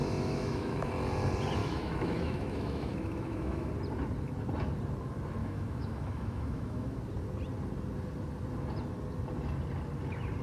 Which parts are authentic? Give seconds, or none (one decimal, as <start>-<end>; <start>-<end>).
0.9-1.6; 3.7-5.4; 7.0-10.4